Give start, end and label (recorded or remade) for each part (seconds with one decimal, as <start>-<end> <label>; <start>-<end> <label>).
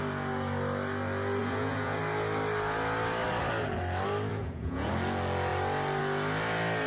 0.0-1.4 recorded; 1.4-2.0 remade; 2.0-4.3 recorded; 4.3-4.9 remade; 4.9-6.9 recorded